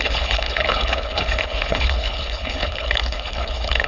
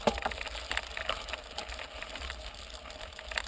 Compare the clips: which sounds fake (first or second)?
first